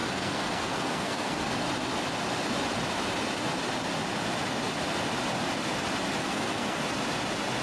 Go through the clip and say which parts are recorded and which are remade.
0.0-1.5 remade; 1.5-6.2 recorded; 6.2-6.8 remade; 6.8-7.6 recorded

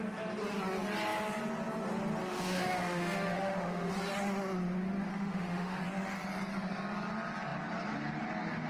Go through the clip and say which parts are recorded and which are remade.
0.0-2.2 recorded; 2.2-3.9 remade; 3.9-5.1 recorded; 5.1-5.8 remade; 5.8-8.7 recorded

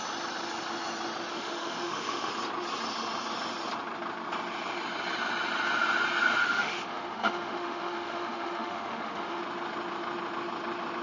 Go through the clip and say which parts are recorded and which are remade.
0.0-1.3 recorded; 1.3-2.3 remade; 2.3-6.4 recorded; 6.4-9.4 remade; 9.4-11.0 recorded